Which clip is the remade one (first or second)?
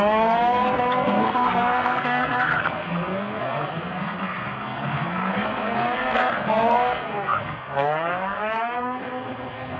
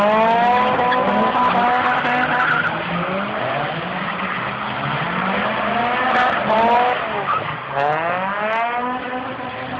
first